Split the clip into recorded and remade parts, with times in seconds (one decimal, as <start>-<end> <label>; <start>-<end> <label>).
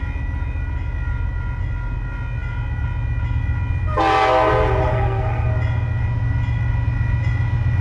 0.0-4.9 recorded; 4.9-5.5 remade; 5.5-7.8 recorded